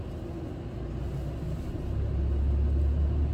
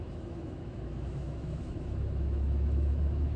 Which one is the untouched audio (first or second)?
first